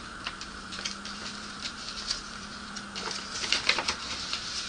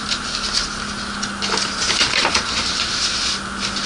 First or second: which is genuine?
second